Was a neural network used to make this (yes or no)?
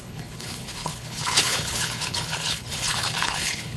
yes